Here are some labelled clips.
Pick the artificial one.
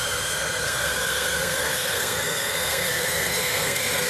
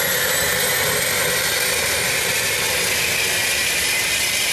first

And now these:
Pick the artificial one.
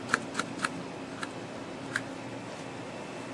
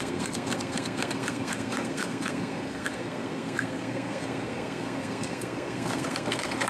second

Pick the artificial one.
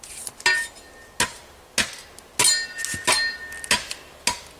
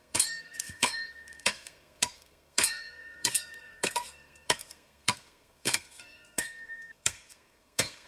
second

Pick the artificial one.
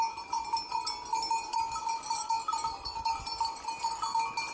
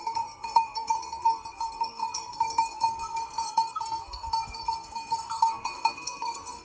second